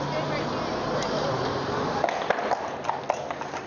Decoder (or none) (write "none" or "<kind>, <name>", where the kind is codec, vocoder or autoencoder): none